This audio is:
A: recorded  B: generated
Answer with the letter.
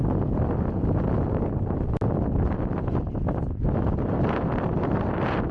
A